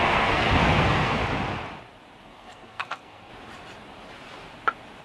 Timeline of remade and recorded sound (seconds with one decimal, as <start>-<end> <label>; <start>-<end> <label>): 0.0-1.2 remade; 1.2-2.2 recorded; 2.2-3.3 remade; 3.3-5.0 recorded